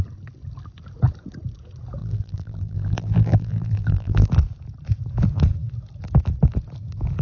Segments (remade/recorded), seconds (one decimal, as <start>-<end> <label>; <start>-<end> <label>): 0.0-2.0 recorded; 2.0-4.3 remade; 4.3-7.2 recorded